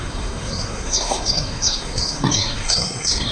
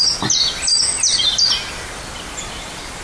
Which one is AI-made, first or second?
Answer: first